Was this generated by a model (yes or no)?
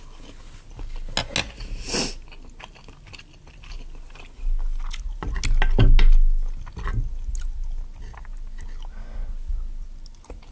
no